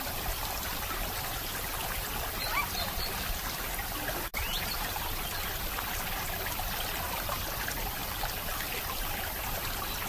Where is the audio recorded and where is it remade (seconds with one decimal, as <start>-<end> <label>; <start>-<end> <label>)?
0.0-4.3 recorded; 4.3-5.1 remade; 5.1-8.0 recorded; 8.0-8.8 remade; 8.8-10.1 recorded